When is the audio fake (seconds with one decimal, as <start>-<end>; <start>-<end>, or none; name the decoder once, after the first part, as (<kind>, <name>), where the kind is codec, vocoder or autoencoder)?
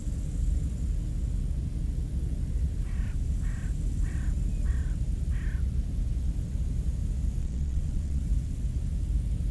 7.4-8.2 (vocoder, Vocos)